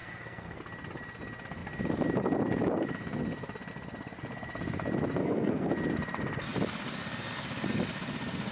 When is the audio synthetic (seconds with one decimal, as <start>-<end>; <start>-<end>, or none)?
0.0-0.6; 5.2-5.7